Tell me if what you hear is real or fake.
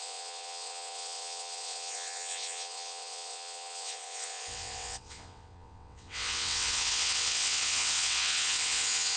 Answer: fake